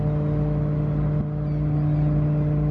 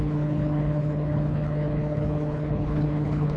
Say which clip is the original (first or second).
first